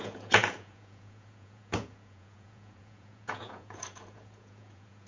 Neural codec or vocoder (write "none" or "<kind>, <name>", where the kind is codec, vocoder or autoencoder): vocoder, Vocos